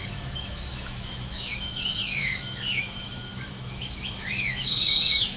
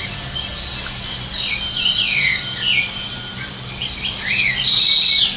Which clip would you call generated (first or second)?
first